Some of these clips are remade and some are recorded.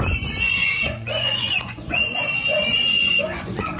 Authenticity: remade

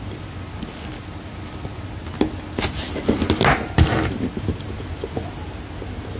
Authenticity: recorded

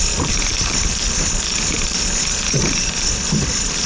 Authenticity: recorded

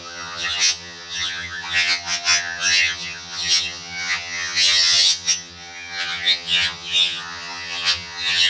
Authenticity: remade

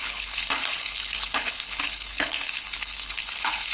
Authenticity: remade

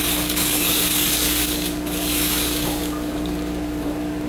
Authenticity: remade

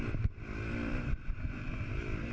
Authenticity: recorded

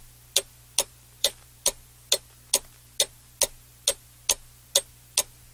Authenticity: recorded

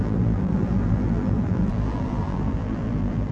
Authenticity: remade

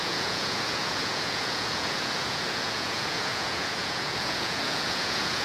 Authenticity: remade